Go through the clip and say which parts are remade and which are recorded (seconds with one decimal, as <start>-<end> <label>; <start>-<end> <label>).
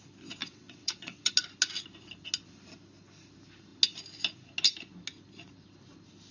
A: 0.0-0.4 recorded; 0.4-1.3 remade; 1.3-6.3 recorded